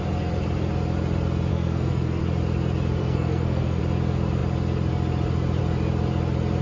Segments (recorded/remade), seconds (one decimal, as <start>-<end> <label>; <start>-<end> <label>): 0.0-1.5 recorded; 1.5-2.2 remade; 2.2-3.0 recorded; 3.0-3.8 remade; 3.8-6.6 recorded